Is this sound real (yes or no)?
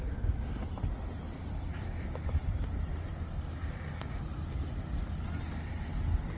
yes